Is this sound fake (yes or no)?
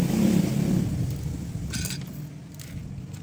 no